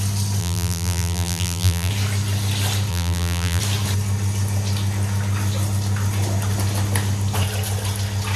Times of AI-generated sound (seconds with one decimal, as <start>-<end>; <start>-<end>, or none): 0.4-1.9; 2.9-3.6

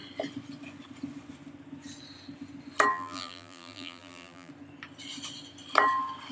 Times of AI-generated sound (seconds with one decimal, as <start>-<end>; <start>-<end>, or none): 2.9-4.5

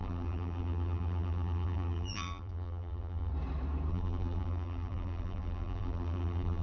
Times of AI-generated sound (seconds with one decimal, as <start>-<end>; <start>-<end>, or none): 0.0-3.3; 3.9-6.6

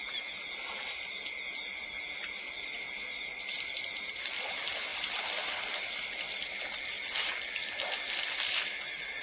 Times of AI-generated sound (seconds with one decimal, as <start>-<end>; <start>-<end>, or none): 4.9-5.5

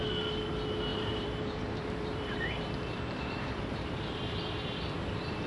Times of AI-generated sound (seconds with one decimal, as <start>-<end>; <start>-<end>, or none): 0.9-4.2

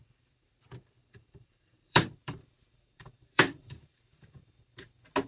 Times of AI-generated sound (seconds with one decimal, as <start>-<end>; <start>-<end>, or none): 1.0-4.2